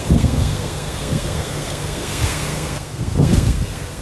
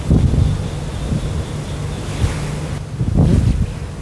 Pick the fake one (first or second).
first